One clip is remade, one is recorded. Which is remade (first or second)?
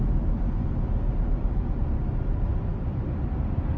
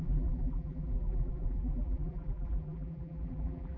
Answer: second